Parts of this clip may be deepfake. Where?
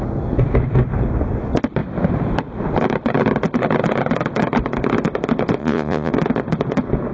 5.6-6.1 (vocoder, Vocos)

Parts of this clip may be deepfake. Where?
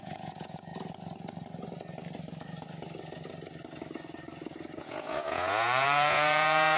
0.0-0.7 (vocoder, Vocos); 4.8-6.8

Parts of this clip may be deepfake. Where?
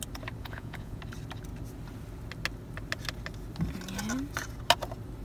0.4-1.0 (vocoder, Vocos)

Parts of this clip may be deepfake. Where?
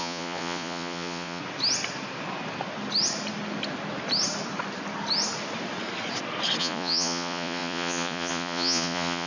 0.0-1.4 (vocoder, Vocos); 6.6-9.3